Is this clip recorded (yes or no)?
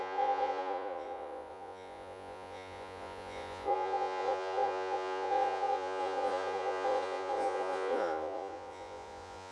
no